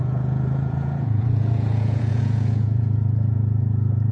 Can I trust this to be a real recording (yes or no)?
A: no